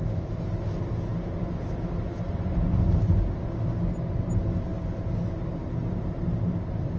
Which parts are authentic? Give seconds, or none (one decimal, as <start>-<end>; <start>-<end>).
0.0-7.0